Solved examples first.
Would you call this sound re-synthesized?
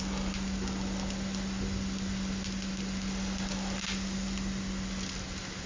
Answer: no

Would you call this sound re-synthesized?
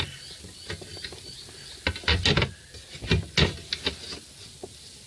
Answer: no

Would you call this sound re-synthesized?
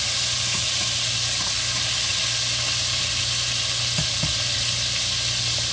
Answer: no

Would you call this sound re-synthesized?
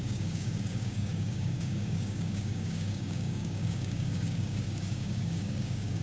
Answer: yes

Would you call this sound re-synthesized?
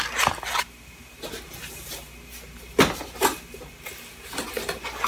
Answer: no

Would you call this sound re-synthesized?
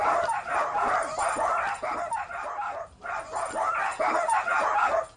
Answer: no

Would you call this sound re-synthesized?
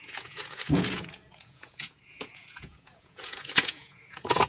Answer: yes